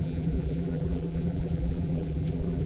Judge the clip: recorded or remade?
remade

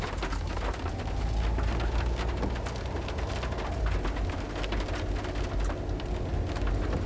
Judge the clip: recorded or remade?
recorded